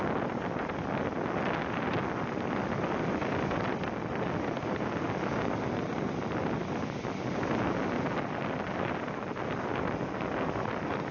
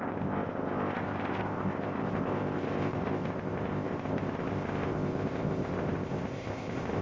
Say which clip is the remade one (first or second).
second